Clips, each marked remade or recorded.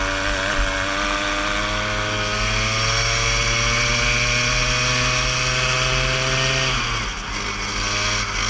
recorded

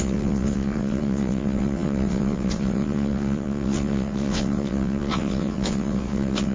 remade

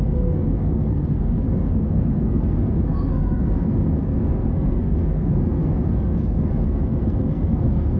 remade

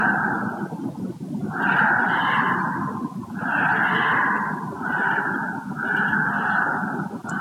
recorded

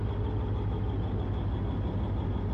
recorded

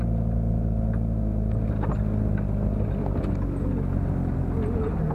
recorded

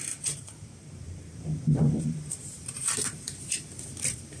remade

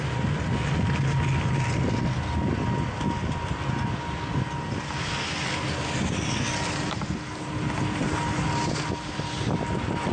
recorded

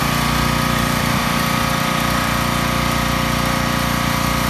remade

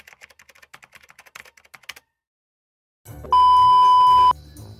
recorded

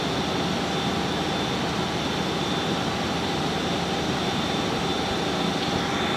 recorded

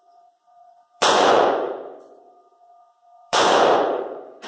remade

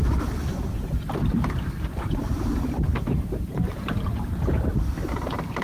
remade